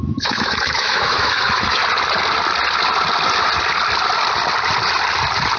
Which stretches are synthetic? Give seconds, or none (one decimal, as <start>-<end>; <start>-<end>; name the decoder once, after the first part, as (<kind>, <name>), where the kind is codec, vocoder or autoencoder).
0.0-1.8 (autoencoder, DAC-VAE)